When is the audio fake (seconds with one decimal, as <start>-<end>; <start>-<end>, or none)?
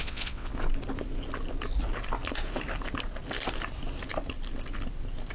0.0-0.5